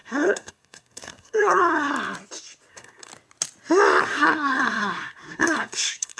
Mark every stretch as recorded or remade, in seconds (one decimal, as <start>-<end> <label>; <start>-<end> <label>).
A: 0.0-1.9 remade; 1.9-2.7 recorded; 2.7-3.1 remade; 3.1-4.0 recorded; 4.0-6.2 remade